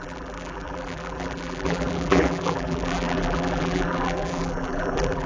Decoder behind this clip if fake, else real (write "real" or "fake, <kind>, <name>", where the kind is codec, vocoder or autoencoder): fake, vocoder, BigVGAN v2